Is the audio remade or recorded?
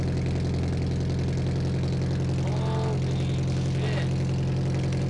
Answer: recorded